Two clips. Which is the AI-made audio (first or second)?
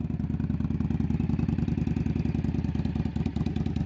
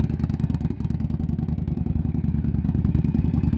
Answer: second